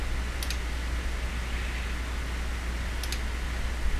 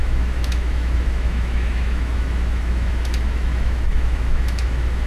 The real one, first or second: first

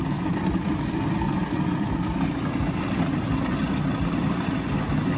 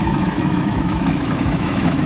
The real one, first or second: first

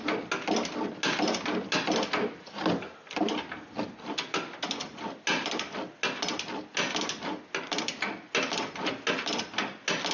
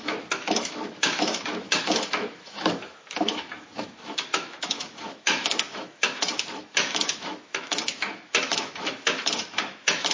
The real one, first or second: first